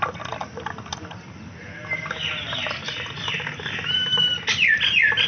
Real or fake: real